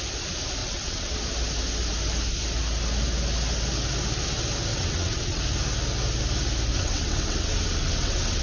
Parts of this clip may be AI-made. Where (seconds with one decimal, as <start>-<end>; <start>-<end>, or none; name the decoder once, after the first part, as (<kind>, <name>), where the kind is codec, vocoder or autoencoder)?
0.6-1.1 (vocoder, WaveNeXt); 4.7-5.4; 6.7-8.4